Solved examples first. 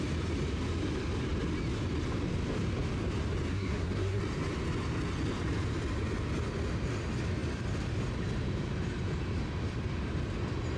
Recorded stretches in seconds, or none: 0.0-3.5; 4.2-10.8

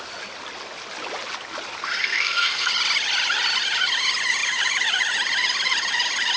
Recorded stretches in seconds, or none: 0.0-2.0; 2.7-6.4